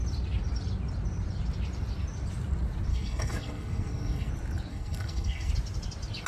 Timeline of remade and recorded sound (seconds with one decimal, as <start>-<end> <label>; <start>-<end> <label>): 0.0-2.9 recorded; 2.9-4.3 remade; 4.3-4.7 recorded; 4.7-5.5 remade; 5.5-6.3 recorded